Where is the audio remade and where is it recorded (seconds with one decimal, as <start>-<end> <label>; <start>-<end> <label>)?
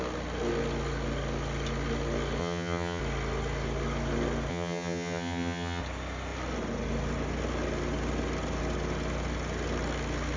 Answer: 0.0-2.4 recorded; 2.4-3.0 remade; 3.0-4.5 recorded; 4.5-5.8 remade; 5.8-10.4 recorded